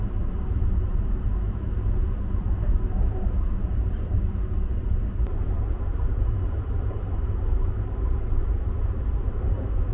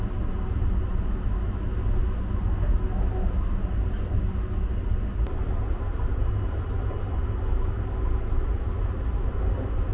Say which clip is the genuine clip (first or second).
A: second